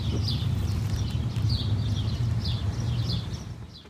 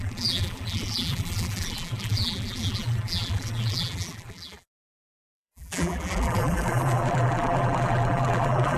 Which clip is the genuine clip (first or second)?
first